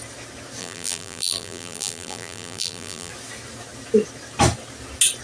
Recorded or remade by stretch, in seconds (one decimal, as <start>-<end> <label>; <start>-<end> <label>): 0.0-0.6 recorded; 0.6-3.1 remade; 3.1-5.2 recorded